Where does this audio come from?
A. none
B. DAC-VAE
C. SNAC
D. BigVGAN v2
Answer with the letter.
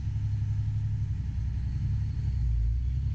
A